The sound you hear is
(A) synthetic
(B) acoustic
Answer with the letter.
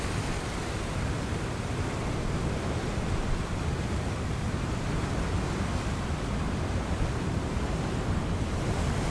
B